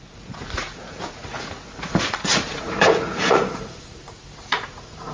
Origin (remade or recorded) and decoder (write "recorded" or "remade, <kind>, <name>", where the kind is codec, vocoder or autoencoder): remade, vocoder, Vocos